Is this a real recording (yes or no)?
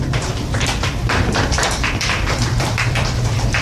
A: no